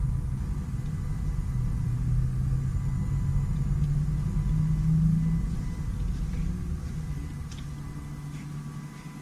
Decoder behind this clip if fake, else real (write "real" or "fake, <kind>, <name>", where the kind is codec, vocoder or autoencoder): real